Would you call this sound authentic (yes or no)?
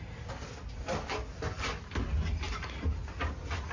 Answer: yes